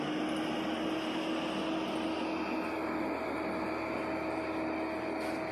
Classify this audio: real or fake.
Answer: real